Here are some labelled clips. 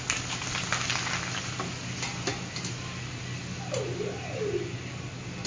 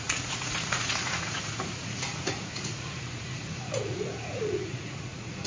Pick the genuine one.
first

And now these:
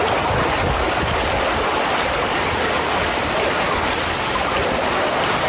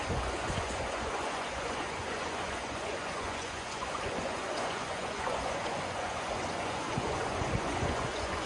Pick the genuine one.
first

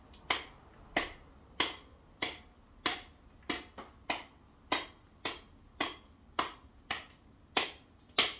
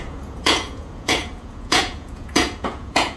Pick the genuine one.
first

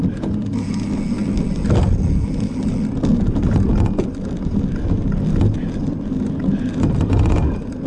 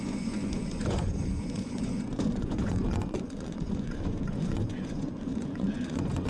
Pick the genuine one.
first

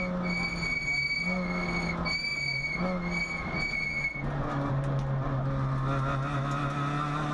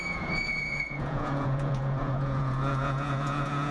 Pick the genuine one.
first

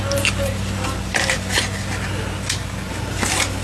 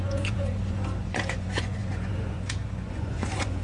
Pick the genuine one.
first